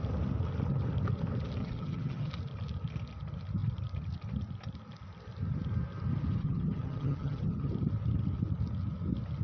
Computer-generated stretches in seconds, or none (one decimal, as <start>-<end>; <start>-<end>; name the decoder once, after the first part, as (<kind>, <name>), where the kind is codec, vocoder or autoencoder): 1.6-2.3 (vocoder, HiFi-GAN); 6.4-7.7